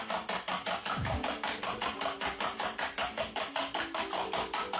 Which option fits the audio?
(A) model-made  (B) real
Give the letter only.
B